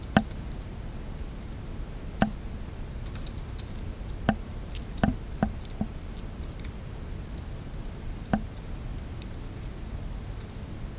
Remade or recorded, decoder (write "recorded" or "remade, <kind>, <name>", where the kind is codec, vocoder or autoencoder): recorded